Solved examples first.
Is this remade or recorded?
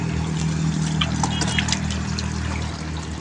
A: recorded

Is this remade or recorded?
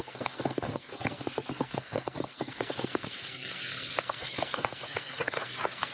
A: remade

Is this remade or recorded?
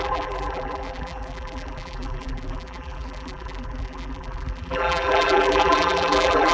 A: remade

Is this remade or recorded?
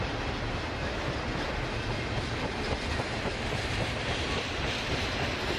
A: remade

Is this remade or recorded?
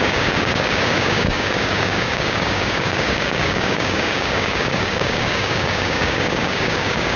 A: remade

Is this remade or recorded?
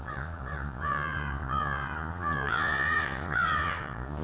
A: remade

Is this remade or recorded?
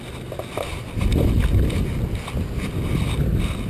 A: recorded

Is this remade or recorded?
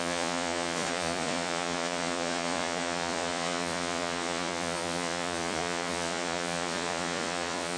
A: remade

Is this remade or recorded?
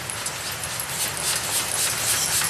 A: recorded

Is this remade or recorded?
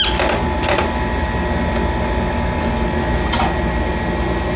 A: recorded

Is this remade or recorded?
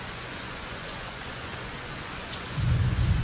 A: remade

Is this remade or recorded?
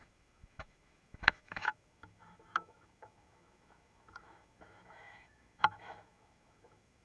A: remade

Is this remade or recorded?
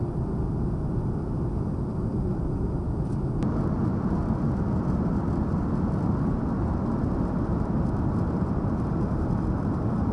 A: recorded